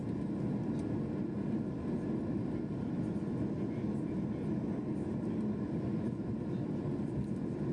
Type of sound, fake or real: real